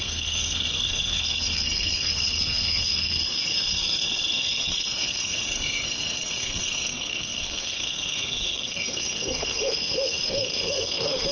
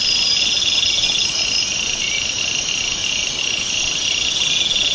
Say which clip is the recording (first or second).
second